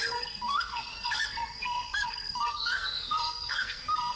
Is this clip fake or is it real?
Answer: fake